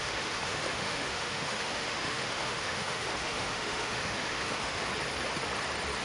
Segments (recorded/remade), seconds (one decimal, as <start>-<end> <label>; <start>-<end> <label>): 0.0-4.9 remade; 4.9-6.0 recorded

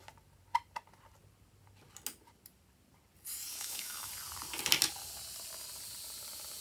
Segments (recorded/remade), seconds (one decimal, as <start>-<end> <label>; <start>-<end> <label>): 0.0-3.5 recorded; 3.5-4.1 remade; 4.1-6.6 recorded

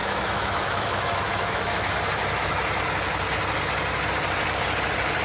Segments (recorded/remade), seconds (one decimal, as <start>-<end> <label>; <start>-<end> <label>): 0.0-1.9 remade; 1.9-5.2 recorded

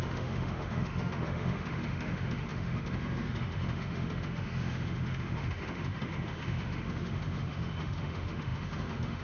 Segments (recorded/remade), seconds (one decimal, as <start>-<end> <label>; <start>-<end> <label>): 0.0-9.2 remade